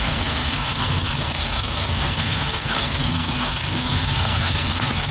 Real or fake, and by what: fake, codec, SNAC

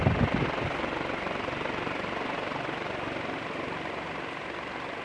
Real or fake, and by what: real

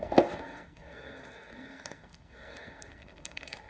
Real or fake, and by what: fake, codec, SNAC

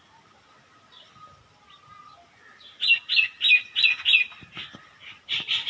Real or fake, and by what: real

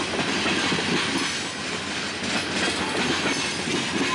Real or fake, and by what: real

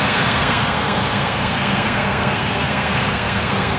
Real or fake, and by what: fake, codec, SNAC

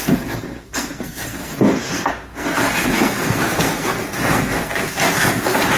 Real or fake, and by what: fake, codec, SNAC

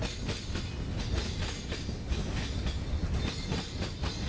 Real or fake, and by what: real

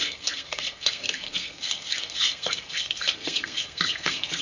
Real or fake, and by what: fake, codec, SNAC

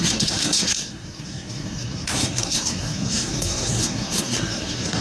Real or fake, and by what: fake, codec, SNAC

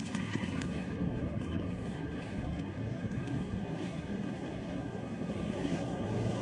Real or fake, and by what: fake, codec, SNAC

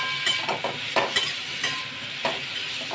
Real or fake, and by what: real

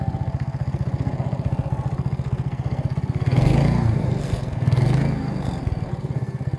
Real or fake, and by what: fake, codec, SNAC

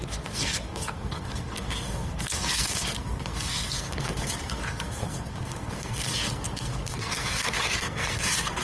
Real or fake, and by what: fake, codec, SNAC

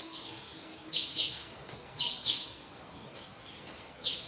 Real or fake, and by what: fake, codec, SNAC